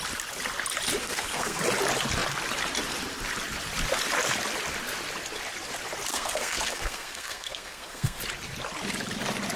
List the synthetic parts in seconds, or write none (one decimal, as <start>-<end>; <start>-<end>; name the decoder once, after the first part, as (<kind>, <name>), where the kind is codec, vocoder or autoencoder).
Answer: 1.0-1.6 (codec, SNAC); 6.1-8.2